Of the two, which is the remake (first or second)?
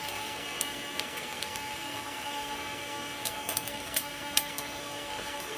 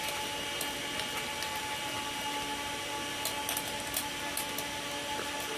first